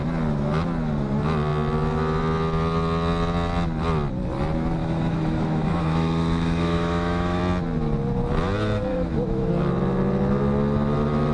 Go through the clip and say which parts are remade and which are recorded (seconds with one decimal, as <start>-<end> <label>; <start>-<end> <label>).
0.0-4.8 recorded; 4.8-7.4 remade; 7.4-8.9 recorded; 8.9-9.5 remade; 9.5-11.3 recorded